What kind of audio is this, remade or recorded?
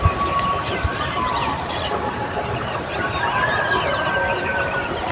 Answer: remade